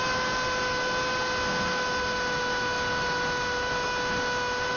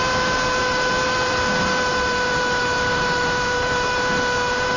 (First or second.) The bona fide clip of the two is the first